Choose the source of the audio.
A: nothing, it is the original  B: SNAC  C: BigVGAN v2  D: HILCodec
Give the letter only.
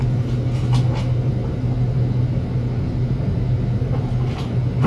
A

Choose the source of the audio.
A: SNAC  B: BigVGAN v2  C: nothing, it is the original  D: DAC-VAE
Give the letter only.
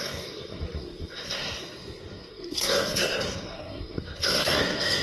A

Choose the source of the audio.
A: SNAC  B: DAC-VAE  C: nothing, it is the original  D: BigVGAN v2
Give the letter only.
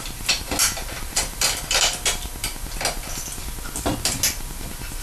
C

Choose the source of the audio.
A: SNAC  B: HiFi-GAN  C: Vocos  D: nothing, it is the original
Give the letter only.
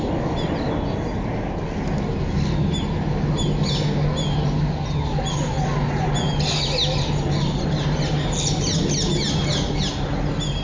D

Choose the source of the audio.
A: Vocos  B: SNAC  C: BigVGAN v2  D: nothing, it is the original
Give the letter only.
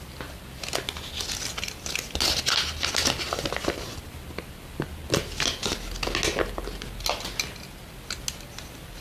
D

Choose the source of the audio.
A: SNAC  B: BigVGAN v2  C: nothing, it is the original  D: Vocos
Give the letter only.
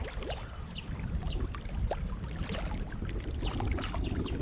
C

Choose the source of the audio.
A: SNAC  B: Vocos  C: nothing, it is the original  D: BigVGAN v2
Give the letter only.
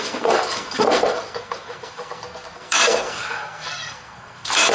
A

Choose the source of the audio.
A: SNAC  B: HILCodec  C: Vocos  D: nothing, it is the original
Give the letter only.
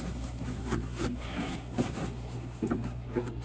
A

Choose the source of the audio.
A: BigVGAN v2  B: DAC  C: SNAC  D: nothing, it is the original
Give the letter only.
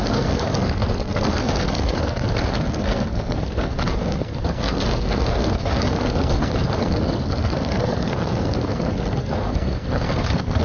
C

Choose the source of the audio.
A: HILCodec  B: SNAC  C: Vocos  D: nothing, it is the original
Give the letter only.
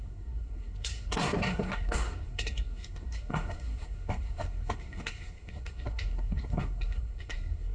B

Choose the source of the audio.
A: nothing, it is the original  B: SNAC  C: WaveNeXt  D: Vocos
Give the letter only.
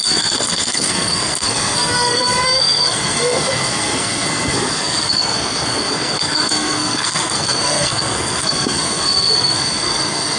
B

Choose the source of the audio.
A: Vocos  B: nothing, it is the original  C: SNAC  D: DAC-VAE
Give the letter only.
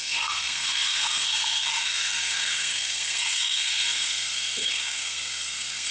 C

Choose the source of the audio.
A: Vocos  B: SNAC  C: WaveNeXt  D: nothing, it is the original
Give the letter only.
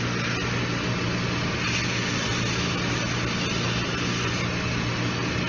D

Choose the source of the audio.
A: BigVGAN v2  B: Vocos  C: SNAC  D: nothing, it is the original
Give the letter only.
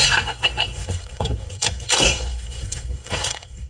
C